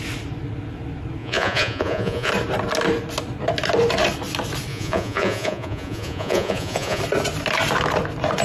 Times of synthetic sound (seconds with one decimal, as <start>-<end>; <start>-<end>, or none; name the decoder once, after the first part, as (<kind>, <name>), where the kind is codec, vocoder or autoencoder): 1.2-2.3 (vocoder, Vocos); 4.7-7.0